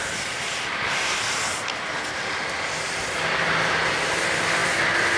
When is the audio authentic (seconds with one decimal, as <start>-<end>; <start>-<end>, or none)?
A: 0.0-5.2